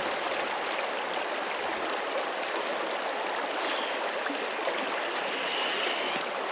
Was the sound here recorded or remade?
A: recorded